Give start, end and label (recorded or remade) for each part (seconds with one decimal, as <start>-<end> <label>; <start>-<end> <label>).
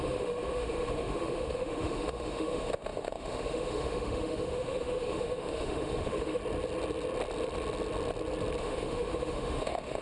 0.0-6.4 remade; 6.4-8.6 recorded; 8.6-10.0 remade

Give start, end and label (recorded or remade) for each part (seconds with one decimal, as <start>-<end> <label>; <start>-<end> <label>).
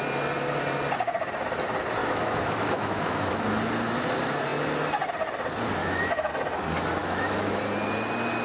0.0-2.0 recorded; 2.0-3.4 remade; 3.4-5.8 recorded; 5.8-6.3 remade; 6.3-7.0 recorded; 7.0-7.6 remade; 7.6-8.4 recorded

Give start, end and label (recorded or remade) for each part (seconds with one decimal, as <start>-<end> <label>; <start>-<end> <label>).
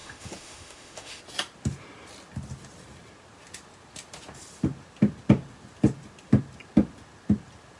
0.0-1.2 remade; 1.2-7.8 recorded